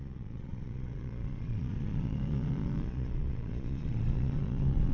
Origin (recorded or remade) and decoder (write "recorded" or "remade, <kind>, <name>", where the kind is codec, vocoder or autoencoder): remade, vocoder, Vocos